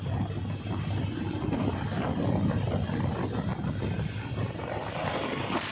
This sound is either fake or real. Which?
real